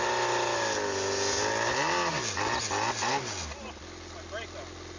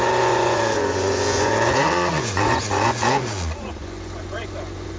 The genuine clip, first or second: first